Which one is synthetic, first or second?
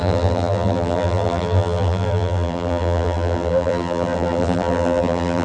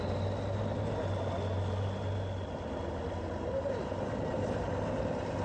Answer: first